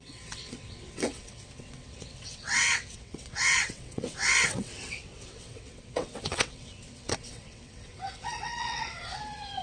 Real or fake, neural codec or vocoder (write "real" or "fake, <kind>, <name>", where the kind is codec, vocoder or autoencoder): fake, vocoder, WaveNeXt